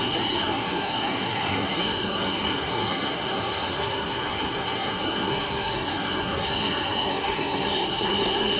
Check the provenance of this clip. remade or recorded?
remade